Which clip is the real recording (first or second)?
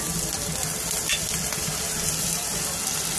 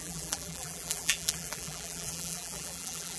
first